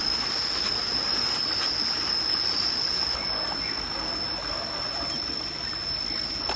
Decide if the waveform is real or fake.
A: real